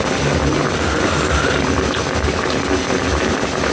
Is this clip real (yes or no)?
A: yes